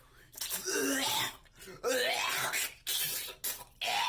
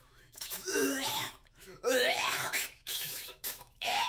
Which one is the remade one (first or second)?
second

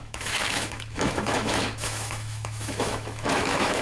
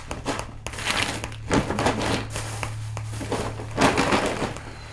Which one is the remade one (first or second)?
first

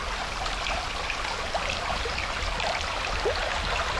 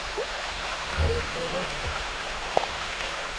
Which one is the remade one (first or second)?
second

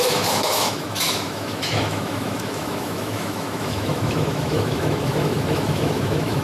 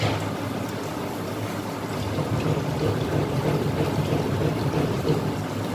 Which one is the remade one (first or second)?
first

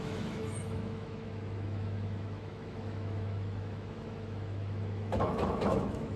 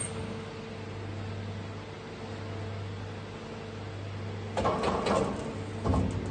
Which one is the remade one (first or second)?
first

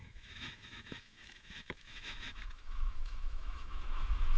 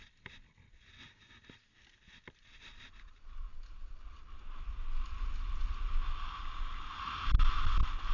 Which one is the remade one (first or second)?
first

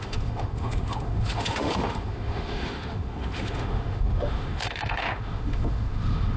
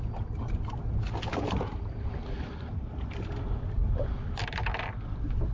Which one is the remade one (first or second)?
first